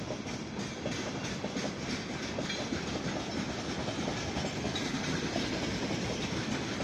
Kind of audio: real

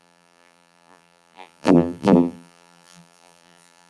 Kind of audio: fake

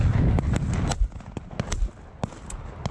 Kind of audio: real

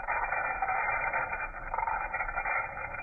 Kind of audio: fake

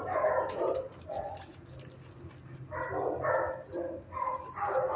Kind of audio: real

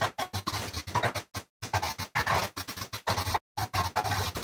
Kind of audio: real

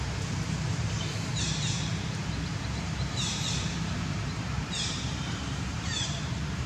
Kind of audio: fake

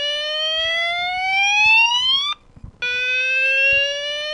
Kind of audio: real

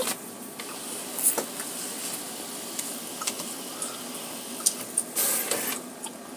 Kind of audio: real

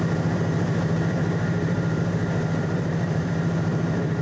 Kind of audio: fake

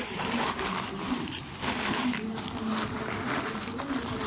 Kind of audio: fake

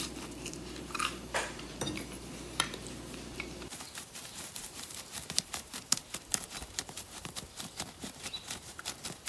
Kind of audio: fake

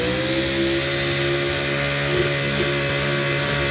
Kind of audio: real